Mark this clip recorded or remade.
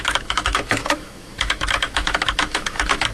remade